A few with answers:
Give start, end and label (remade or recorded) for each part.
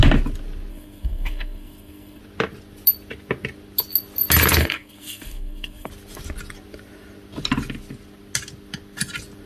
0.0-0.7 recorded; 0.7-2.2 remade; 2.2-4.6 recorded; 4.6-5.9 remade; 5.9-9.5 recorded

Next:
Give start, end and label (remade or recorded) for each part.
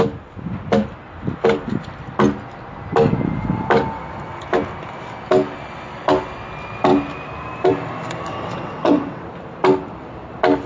0.0-8.3 recorded; 8.3-9.2 remade; 9.2-10.7 recorded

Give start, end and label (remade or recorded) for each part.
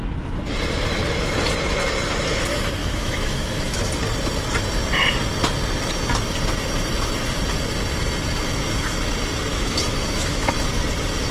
0.0-2.8 recorded; 2.8-3.8 remade; 3.8-9.5 recorded; 9.5-10.5 remade; 10.5-11.3 recorded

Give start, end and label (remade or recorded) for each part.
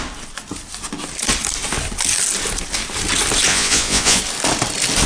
0.0-3.5 recorded; 3.5-4.2 remade; 4.2-5.1 recorded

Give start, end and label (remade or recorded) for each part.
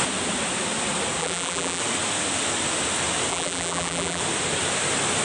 0.0-1.2 recorded; 1.2-1.8 remade; 1.8-3.3 recorded; 3.3-4.2 remade; 4.2-5.2 recorded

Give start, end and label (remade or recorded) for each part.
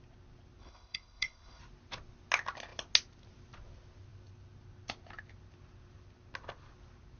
0.0-0.6 recorded; 0.6-1.6 remade; 1.6-7.2 recorded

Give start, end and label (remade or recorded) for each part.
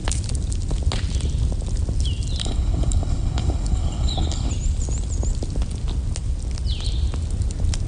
0.0-2.4 recorded; 2.4-4.5 remade; 4.5-7.9 recorded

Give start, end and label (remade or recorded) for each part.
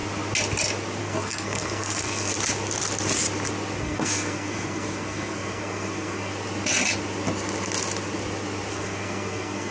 0.0-1.0 recorded; 1.0-2.3 remade; 2.3-3.8 recorded; 3.8-6.3 remade; 6.3-8.7 recorded; 8.7-9.7 remade